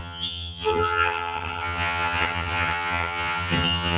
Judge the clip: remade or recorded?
remade